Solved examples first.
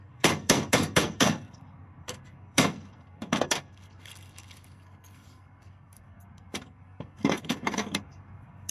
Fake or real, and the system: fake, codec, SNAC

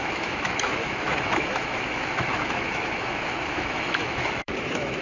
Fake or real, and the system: fake, autoencoder, DAC-VAE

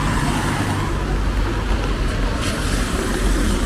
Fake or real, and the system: real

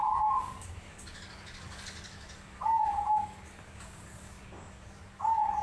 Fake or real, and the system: fake, codec, DAC